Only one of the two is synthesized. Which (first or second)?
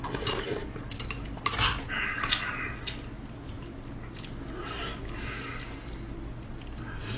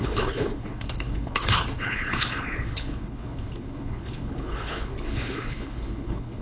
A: second